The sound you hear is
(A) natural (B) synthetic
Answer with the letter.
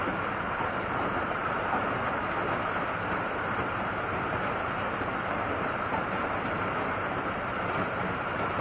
B